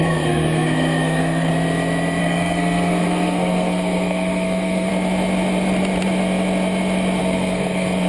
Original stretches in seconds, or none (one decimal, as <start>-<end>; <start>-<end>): 1.5-2.2; 4.9-7.2

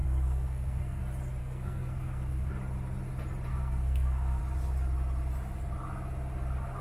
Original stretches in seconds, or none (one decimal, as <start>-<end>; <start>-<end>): 1.0-1.4; 2.5-3.5; 4.4-6.8